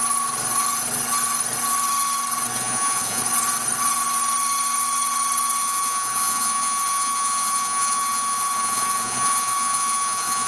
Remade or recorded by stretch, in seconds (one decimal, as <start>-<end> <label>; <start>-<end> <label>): 0.0-2.5 recorded; 2.5-3.2 remade; 3.2-5.6 recorded; 5.6-10.5 remade